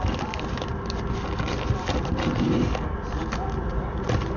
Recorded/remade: recorded